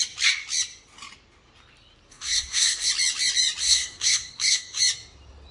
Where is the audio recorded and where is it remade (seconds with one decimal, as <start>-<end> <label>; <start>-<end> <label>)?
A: 0.0-2.1 recorded; 2.1-2.9 remade; 2.9-3.6 recorded; 3.6-4.8 remade; 4.8-5.5 recorded